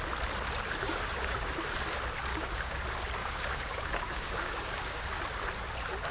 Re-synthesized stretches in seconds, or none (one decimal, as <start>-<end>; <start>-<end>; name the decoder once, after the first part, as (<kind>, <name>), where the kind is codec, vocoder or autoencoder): 0.8-1.5 (codec, DAC); 2.3-2.8; 3.2-5.2